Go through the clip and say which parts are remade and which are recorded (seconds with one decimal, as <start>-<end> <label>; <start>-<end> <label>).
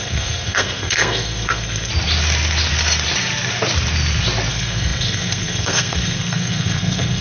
0.0-1.9 remade; 1.9-4.5 recorded; 4.5-7.2 remade